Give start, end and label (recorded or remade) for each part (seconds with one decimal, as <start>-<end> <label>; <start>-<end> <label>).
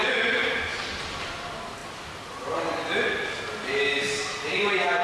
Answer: 0.0-0.4 remade; 0.4-1.0 recorded; 1.0-1.8 remade; 1.8-4.4 recorded; 4.4-5.0 remade